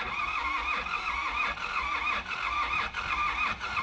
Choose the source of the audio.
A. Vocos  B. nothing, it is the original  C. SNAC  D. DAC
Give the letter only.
B